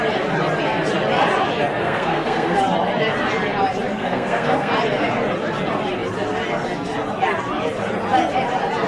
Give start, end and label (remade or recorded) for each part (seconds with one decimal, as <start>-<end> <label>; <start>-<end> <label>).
0.0-1.8 recorded; 1.8-2.6 remade; 2.6-3.9 recorded; 3.9-4.7 remade; 4.7-8.9 recorded